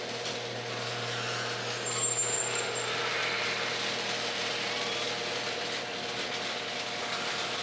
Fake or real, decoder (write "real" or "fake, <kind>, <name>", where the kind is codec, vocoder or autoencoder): real